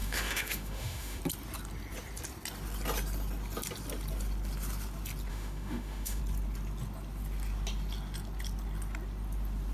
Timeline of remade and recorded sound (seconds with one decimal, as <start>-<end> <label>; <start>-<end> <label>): 0.0-1.2 remade; 1.2-5.3 recorded; 5.3-6.2 remade; 6.2-9.7 recorded